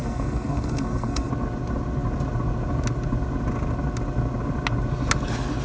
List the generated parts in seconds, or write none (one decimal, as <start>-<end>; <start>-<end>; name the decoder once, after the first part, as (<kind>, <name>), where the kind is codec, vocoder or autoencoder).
0.0-1.3 (codec, SNAC)